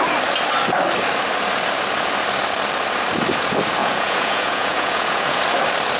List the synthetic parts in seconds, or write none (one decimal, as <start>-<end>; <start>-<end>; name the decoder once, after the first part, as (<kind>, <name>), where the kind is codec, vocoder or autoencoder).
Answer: 3.8-5.4 (vocoder, Vocos)